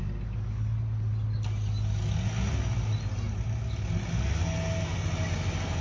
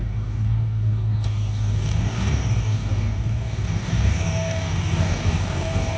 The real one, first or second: first